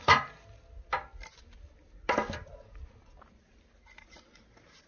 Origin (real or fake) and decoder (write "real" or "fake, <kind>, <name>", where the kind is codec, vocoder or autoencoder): real